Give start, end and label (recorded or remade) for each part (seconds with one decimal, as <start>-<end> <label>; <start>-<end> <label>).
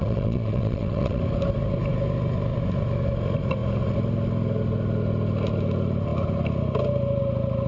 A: 0.0-1.2 remade; 1.2-7.7 recorded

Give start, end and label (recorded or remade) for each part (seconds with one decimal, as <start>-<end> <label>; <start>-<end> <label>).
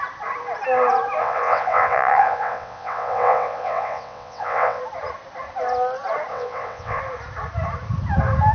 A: 0.0-1.2 recorded; 1.2-4.8 remade; 4.8-6.3 recorded; 6.3-7.0 remade; 7.0-8.5 recorded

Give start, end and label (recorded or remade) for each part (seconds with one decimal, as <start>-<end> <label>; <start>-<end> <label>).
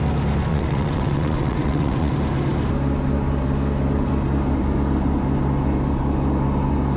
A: 0.0-0.5 recorded; 0.5-2.1 remade; 2.1-7.0 recorded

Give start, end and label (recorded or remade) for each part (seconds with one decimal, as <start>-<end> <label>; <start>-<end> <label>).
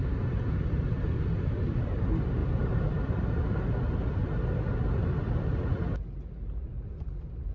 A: 0.0-7.5 recorded